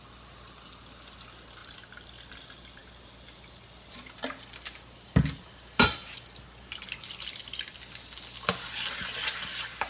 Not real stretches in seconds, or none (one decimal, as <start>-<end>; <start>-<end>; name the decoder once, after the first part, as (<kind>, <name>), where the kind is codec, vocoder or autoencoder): 1.6-2.3 (vocoder, BigVGAN v2)